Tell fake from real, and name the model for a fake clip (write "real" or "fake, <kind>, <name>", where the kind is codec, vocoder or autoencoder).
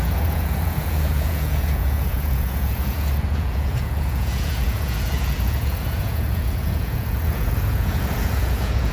fake, vocoder, Vocos